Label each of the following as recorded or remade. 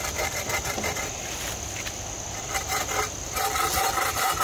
recorded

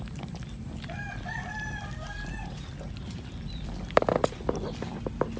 remade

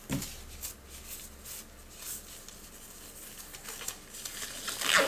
recorded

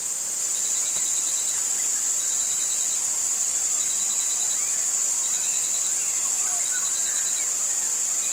recorded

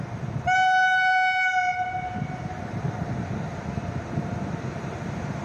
recorded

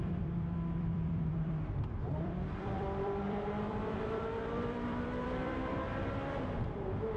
remade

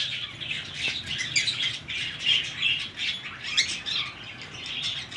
recorded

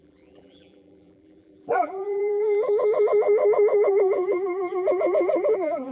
remade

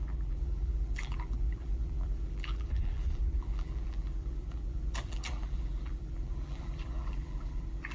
remade